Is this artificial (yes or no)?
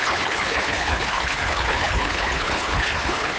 yes